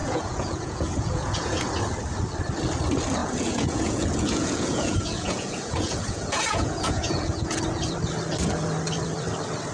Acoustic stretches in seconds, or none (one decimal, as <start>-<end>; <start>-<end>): 1.7-3.2; 7.6-9.7